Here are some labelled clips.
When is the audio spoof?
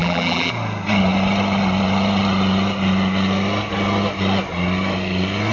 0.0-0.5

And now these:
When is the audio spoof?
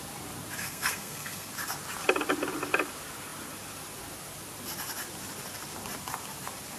0.6-1.5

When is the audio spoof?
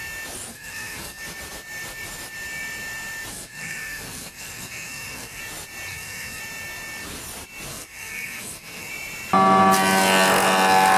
0.5-1.2; 3.3-5.4; 5.9-6.4; 7.7-8.9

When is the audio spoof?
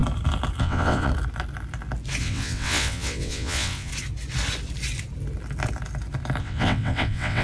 0.6-1.1; 2.2-3.9; 6.4-7.4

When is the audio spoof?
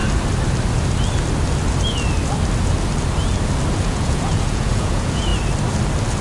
3.7-5.3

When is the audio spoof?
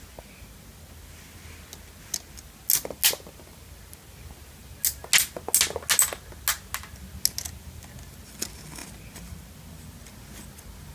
none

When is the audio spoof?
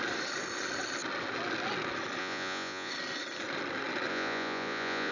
2.2-2.9; 4.1-5.1